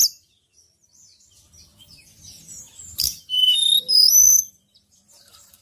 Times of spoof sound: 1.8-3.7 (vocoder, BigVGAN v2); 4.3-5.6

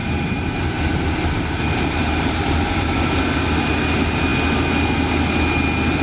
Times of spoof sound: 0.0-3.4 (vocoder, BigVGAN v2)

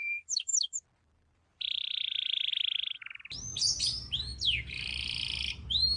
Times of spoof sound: 0.0-0.5 (vocoder, BigVGAN v2); 1.0-2.5; 3.4-4.3; 5.5-6.0